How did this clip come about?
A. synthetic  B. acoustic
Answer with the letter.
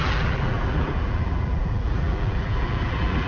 A